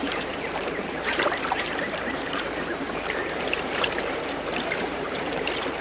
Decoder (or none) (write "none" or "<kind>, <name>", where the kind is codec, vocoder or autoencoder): vocoder, BigVGAN v2